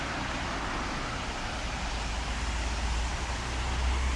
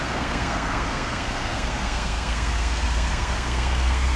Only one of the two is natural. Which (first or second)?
first